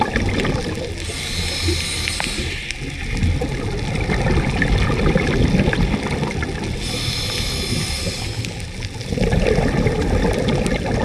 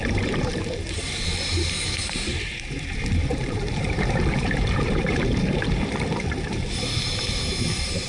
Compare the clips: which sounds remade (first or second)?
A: second